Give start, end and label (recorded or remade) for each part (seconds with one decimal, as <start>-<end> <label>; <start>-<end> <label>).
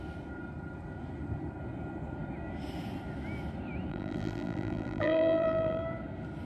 0.0-3.9 recorded; 3.9-5.8 remade; 5.8-6.5 recorded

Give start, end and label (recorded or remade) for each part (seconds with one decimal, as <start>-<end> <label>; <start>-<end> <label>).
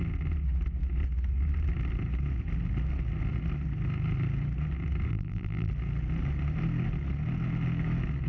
0.0-5.1 recorded; 5.1-5.7 remade; 5.7-8.3 recorded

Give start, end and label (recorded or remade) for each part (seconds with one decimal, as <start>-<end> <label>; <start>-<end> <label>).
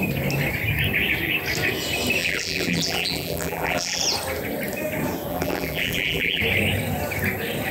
0.0-2.2 recorded; 2.2-4.0 remade; 4.0-5.3 recorded; 5.3-6.4 remade; 6.4-7.7 recorded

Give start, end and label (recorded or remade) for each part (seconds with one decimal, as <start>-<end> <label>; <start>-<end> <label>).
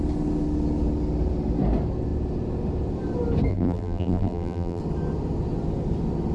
0.0-3.5 recorded; 3.5-4.8 remade; 4.8-6.3 recorded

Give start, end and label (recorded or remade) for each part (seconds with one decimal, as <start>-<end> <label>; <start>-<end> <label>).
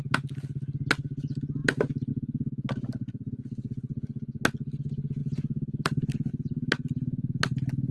0.0-5.2 recorded; 5.2-6.3 remade; 6.3-7.9 recorded